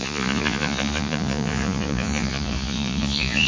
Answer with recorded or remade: remade